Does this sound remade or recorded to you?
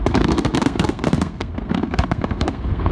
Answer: remade